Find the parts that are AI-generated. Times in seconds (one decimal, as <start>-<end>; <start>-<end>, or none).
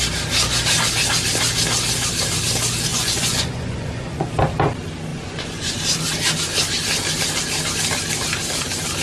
2.9-4.3; 5.1-5.7